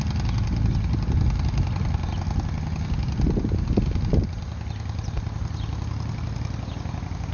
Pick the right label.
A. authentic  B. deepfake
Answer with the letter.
A